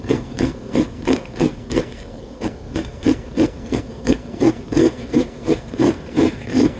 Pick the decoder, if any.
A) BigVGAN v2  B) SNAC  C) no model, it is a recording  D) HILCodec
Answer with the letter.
B